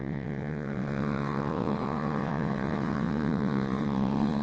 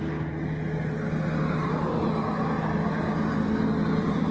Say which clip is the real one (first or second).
second